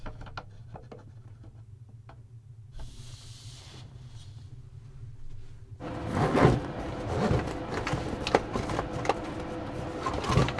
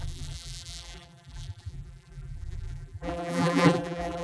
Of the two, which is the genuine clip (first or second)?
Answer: first